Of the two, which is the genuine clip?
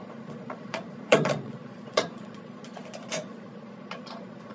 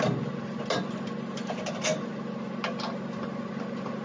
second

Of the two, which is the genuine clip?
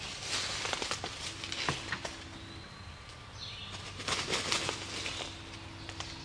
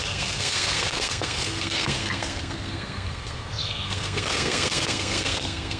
first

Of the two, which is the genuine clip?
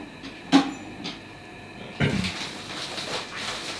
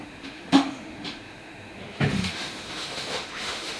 first